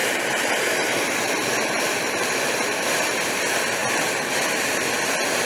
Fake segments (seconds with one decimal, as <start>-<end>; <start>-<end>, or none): 0.0-3.3; 3.8-4.8